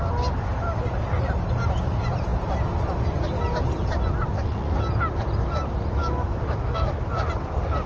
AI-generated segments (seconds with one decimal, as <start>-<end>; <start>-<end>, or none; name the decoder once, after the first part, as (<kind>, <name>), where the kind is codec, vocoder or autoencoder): 6.0-7.1 (autoencoder, DAC-VAE)